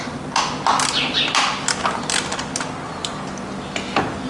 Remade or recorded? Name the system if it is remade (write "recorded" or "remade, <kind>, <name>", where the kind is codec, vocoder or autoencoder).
recorded